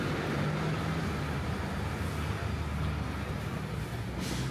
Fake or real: real